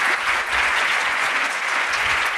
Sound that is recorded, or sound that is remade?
remade